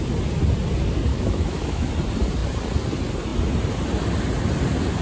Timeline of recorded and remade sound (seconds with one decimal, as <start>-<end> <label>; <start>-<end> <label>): 0.0-1.1 recorded; 1.1-1.9 remade; 1.9-5.0 recorded